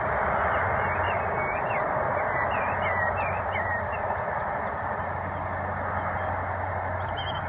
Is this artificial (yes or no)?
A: no